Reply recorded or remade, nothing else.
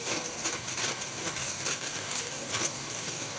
remade